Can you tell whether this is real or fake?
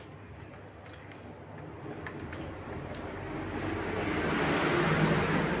real